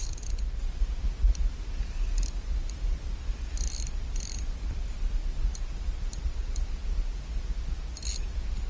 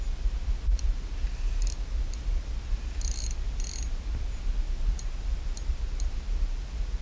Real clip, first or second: second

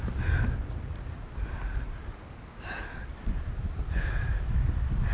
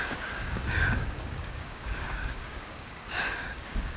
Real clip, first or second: first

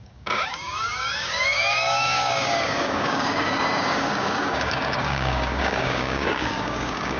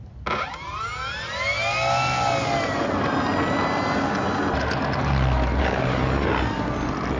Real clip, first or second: second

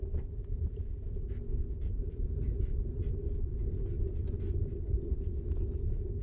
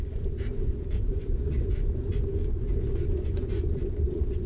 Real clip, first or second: first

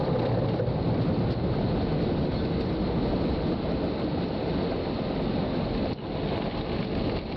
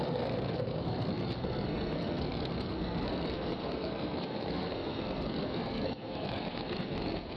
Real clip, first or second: first